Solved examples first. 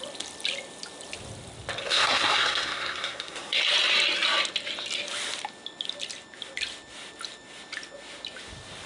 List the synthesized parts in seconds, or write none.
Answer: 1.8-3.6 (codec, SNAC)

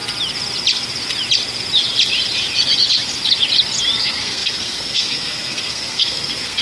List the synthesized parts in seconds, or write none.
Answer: 4.0-6.6 (codec, SNAC)